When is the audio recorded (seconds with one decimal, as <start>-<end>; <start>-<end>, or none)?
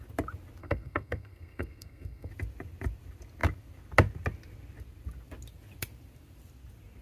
0.0-0.6; 2.3-7.0